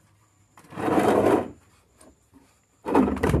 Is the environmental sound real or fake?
fake